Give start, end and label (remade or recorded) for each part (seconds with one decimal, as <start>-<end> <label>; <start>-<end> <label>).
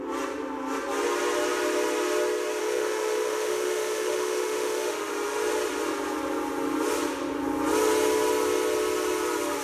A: 0.0-2.6 recorded; 2.6-5.1 remade; 5.1-9.6 recorded